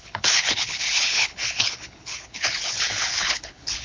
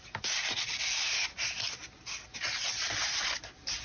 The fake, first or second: first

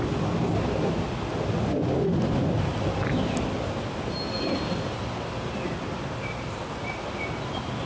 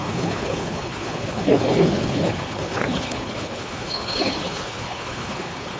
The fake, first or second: second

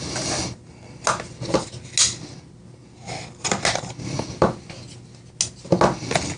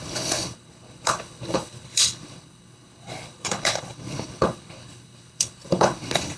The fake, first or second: second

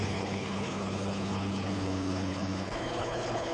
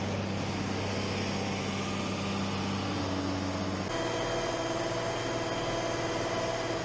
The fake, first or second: first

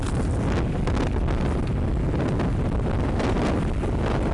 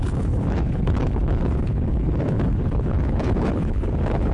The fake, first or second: second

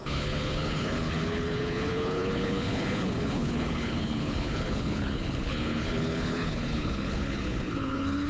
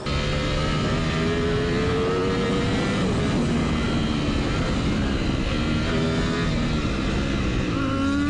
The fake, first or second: first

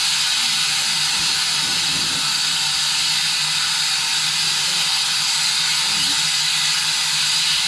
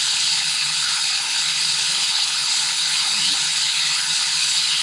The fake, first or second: second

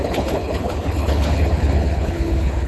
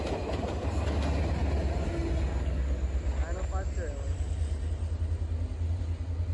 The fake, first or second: first